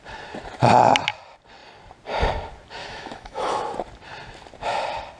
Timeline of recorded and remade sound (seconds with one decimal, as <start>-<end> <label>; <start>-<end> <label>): 0.0-2.8 recorded; 2.8-3.6 remade; 3.6-5.2 recorded